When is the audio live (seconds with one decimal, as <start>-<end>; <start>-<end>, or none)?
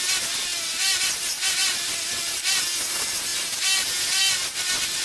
0.0-1.6; 2.5-5.0